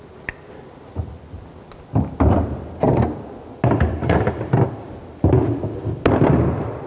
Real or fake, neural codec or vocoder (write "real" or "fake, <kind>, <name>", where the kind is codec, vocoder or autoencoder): real